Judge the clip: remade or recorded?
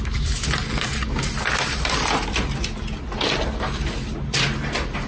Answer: recorded